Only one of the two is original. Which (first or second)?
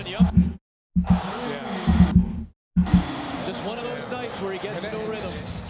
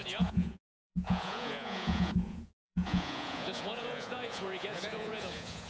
first